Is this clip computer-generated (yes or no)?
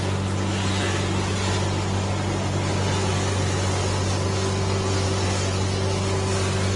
no